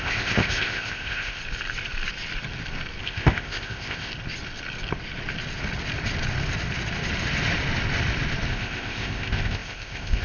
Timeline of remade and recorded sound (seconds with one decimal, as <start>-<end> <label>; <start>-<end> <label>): 0.0-1.4 remade; 1.4-3.0 recorded; 3.0-4.1 remade; 4.1-8.5 recorded; 8.5-10.2 remade